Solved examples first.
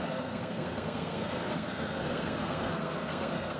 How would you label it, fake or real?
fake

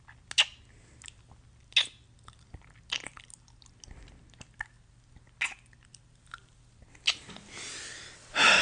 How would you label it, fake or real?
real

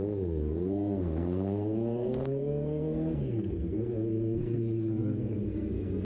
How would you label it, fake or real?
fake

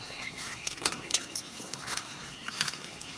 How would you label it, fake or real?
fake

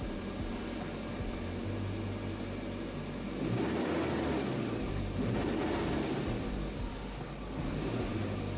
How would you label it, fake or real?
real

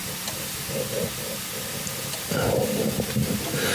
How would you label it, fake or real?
real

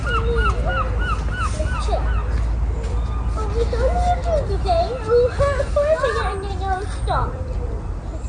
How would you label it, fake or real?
real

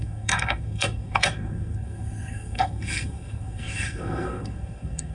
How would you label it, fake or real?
fake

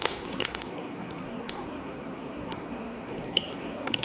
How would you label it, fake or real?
fake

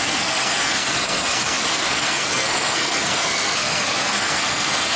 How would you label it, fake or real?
fake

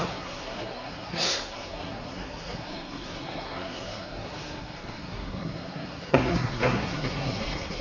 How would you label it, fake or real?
fake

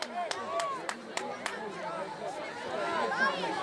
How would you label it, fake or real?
real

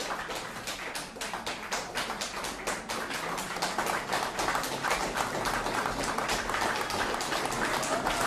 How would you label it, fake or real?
real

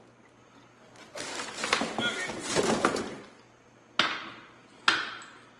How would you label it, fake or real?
real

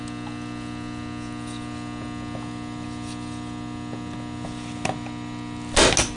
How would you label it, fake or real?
real